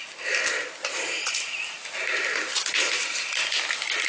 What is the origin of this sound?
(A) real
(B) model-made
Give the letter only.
A